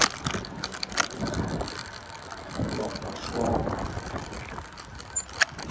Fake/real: real